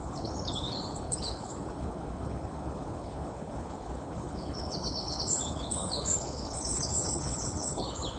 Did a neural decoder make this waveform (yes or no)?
yes